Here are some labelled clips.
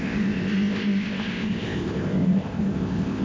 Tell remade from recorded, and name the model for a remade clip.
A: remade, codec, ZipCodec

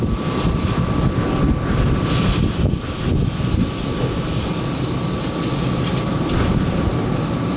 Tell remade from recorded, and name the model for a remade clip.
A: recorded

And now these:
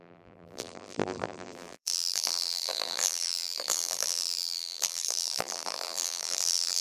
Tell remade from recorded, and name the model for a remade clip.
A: remade, vocoder, BigVGAN v2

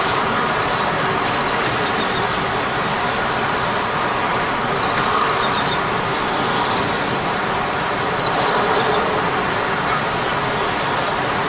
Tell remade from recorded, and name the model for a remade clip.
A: recorded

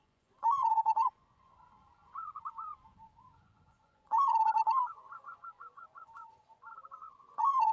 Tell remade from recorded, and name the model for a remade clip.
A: remade, vocoder, Vocos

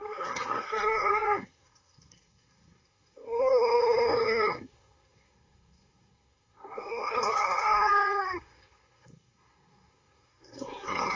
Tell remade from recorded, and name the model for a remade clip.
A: remade, codec, SNAC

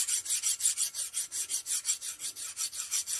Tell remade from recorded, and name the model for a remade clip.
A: recorded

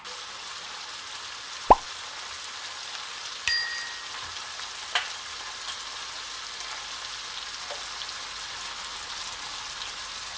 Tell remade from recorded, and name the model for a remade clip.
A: recorded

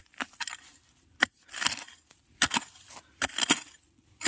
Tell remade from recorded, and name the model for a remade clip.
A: recorded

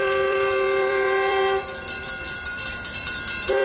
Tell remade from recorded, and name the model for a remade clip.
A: remade, vocoder, BigVGAN v2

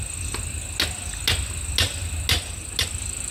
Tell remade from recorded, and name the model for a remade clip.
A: recorded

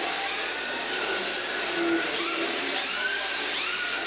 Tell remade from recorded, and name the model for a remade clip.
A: recorded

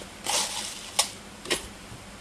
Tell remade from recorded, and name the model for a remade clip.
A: recorded